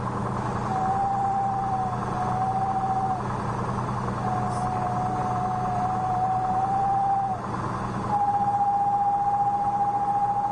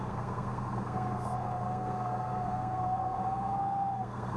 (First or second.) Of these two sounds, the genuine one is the first